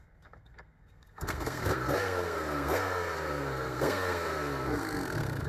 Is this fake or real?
fake